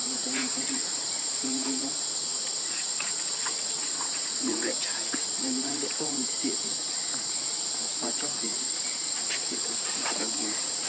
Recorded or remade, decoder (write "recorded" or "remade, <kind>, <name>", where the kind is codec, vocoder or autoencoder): remade, vocoder, Vocos